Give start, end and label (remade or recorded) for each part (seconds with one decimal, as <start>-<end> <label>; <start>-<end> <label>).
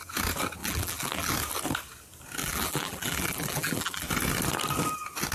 0.0-0.6 recorded; 0.6-1.3 remade; 1.3-2.4 recorded; 2.4-4.1 remade; 4.1-5.3 recorded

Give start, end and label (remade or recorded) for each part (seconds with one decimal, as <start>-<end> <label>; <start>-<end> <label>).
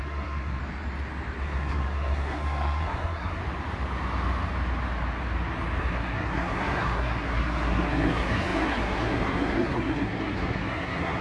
0.0-0.6 remade; 0.6-1.4 recorded; 1.4-3.4 remade; 3.4-5.8 recorded; 5.8-11.2 remade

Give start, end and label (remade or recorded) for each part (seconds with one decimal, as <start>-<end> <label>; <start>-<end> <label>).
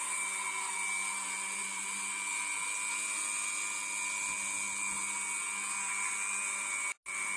0.0-7.4 recorded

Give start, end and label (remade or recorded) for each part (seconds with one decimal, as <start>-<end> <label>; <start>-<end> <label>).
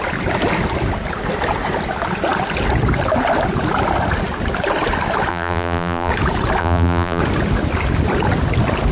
0.0-5.3 recorded; 5.3-6.1 remade; 6.1-6.6 recorded; 6.6-7.2 remade; 7.2-8.9 recorded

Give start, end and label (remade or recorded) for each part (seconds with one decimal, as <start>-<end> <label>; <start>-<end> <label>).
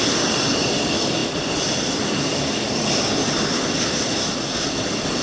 0.0-5.2 recorded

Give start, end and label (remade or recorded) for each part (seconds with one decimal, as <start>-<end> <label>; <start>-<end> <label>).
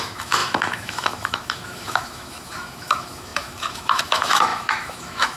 0.0-5.4 remade